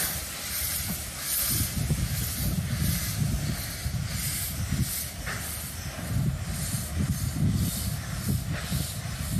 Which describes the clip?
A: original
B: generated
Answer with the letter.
A